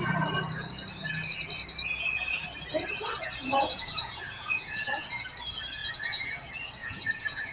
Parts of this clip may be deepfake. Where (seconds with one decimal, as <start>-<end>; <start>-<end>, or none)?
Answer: 3.4-5.1; 5.8-6.3; 6.8-7.5